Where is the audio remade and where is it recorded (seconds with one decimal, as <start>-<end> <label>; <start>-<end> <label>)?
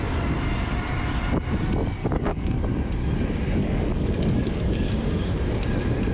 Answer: 0.0-2.0 recorded; 2.0-2.6 remade; 2.6-3.6 recorded; 3.6-4.9 remade; 4.9-6.1 recorded